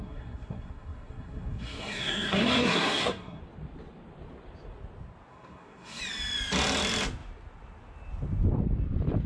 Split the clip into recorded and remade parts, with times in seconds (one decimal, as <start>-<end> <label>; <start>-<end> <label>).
0.0-3.4 remade; 3.4-5.3 recorded; 5.3-6.0 remade; 6.0-9.3 recorded